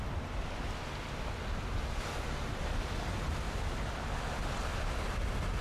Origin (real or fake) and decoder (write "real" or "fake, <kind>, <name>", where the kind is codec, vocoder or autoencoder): real